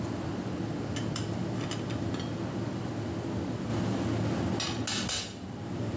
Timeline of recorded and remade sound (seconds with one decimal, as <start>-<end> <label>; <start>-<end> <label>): 0.0-6.0 recorded